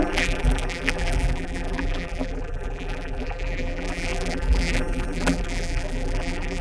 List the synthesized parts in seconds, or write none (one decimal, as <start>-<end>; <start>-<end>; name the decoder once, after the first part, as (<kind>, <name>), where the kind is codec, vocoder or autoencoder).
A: 0.0-6.6 (vocoder, BigVGAN v2)